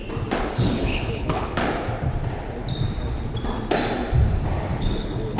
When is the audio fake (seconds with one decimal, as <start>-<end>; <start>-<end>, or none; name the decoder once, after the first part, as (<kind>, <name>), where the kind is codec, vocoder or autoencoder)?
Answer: 0.5-1.6 (codec, HILCodec); 4.8-5.4